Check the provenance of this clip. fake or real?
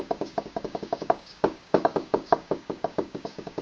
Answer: fake